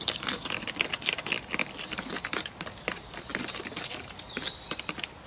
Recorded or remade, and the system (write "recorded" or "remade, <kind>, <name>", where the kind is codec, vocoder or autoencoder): remade, vocoder, BigVGAN v2